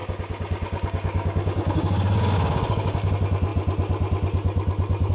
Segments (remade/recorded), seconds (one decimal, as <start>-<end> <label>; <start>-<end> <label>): 0.0-3.1 remade; 3.1-5.1 recorded